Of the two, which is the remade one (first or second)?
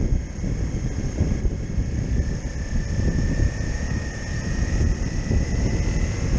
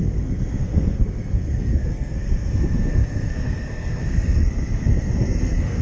second